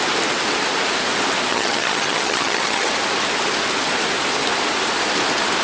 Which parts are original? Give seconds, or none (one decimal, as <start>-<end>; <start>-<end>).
0.0-1.5; 2.9-5.6